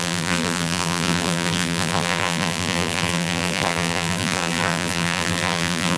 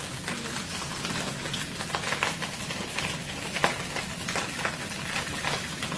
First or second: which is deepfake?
first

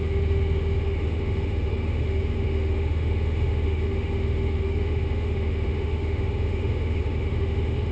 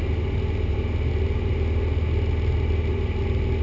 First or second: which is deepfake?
first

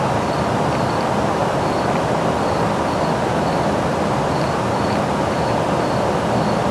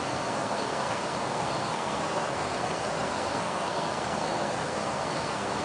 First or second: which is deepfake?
second